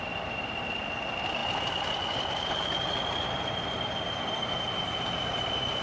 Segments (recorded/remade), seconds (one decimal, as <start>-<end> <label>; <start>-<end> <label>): 0.0-5.8 recorded